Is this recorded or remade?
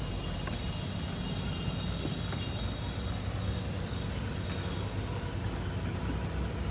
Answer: recorded